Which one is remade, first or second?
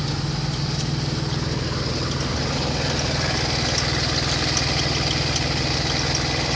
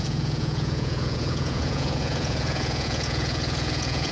second